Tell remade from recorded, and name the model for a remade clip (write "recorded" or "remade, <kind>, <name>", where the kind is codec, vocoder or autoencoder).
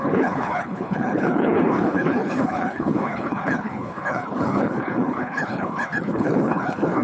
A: remade, codec, HILCodec